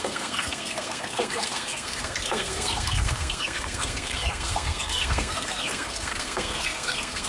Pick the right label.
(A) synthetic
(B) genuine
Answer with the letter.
A